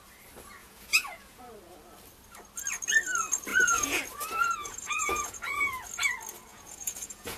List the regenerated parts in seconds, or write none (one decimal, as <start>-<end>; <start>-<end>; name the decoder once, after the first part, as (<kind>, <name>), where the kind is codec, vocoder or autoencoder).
0.6-1.4 (vocoder, Vocos); 3.5-4.0; 4.6-5.7; 6.5-7.4